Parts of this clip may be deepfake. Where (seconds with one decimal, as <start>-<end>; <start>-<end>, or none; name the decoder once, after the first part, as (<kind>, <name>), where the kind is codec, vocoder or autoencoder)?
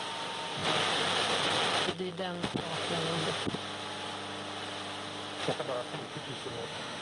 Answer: 6.1-7.0 (autoencoder, DAC-VAE)